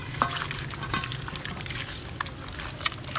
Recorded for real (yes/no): yes